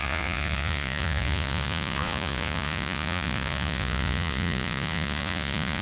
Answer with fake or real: fake